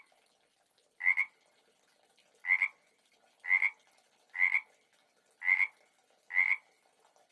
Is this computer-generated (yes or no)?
no